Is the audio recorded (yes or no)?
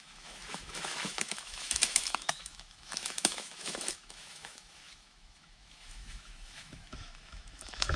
no